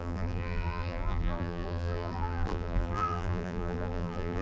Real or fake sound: fake